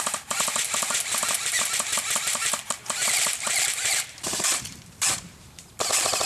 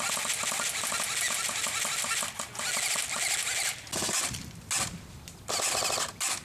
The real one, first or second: second